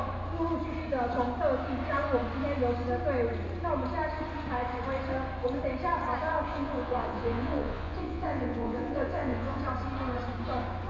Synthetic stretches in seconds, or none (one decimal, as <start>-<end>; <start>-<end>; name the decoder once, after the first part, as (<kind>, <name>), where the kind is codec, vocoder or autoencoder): 6.5-9.6 (vocoder, Vocos)